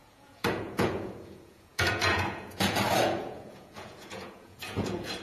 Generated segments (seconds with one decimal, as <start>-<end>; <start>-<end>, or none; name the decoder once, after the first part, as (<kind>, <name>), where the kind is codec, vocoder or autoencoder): 0.0-5.2 (vocoder, Vocos)